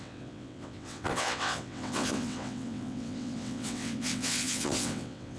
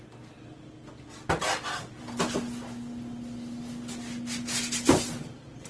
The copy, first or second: first